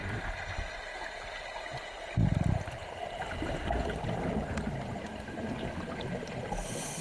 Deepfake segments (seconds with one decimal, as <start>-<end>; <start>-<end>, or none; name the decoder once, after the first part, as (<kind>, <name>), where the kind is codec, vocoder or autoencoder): none

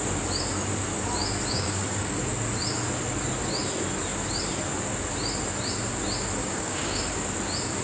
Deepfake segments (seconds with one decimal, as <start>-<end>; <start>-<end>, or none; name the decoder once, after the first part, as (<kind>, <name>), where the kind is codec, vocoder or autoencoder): 1.5-2.2 (codec, DAC); 6.4-7.0

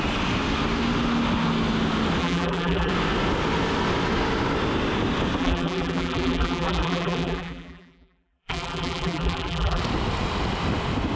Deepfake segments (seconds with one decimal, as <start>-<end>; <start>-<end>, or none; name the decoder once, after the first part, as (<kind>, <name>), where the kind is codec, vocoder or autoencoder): 2.2-2.9 (vocoder, BigVGAN v2); 5.4-9.8

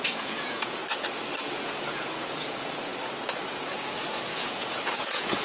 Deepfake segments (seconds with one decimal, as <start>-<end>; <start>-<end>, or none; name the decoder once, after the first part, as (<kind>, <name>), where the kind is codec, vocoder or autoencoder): 0.0-0.8 (vocoder, Vocos); 1.5-2.9; 3.6-5.4

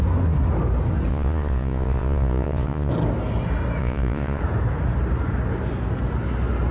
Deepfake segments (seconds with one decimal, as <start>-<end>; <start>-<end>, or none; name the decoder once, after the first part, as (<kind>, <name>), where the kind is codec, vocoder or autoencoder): 1.1-2.9 (vocoder, Vocos); 3.8-4.4

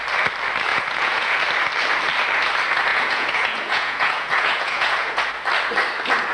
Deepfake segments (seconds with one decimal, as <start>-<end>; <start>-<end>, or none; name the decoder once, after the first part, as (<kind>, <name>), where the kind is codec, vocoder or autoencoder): 0.7-1.4 (vocoder, Vocos); 2.9-5.2

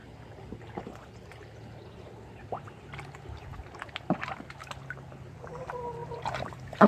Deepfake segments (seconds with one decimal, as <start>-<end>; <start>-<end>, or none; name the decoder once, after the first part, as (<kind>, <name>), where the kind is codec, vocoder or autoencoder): 6.0-6.9 (vocoder, BigVGAN v2)

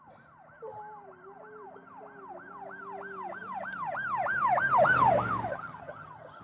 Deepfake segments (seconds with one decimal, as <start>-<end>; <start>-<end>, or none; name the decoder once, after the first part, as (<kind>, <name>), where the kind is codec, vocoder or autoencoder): 5.5-6.4 (vocoder, HiFi-GAN)